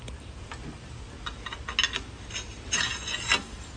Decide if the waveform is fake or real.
real